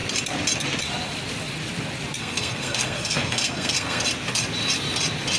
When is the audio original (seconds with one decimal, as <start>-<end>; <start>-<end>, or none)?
0.0-2.2; 4.0-5.4